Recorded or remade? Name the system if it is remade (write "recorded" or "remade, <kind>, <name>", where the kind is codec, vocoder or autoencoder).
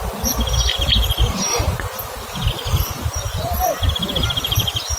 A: remade, vocoder, BigVGAN v2